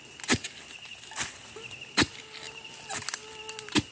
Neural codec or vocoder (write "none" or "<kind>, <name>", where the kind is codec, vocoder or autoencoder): none